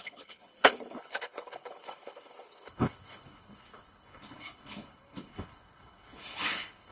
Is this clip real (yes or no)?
no